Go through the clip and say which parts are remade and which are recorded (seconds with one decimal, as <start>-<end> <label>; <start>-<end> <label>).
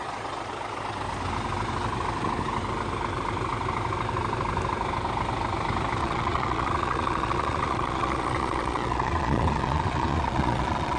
0.0-6.0 recorded; 6.0-11.0 remade